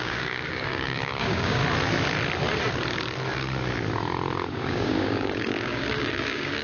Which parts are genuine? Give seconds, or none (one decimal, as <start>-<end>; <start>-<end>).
1.6-4.5